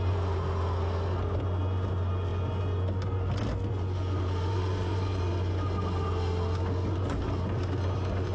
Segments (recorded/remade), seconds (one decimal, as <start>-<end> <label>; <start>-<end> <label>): 0.0-4.5 recorded; 4.5-5.2 remade; 5.2-8.3 recorded